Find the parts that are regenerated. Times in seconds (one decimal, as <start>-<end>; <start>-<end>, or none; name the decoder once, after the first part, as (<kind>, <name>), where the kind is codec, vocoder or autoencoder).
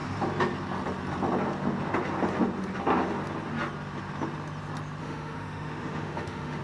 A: 5.0-6.6 (autoencoder, DAC-VAE)